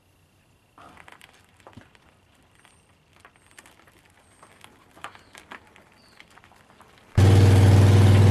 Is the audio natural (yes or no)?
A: yes